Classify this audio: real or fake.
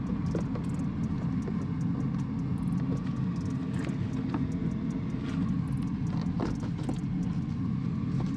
real